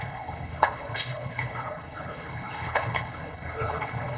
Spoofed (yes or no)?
yes